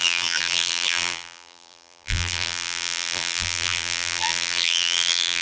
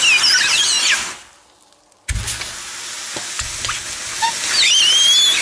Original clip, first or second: second